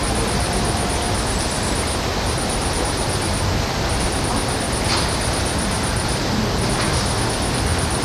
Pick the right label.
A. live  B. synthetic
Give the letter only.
A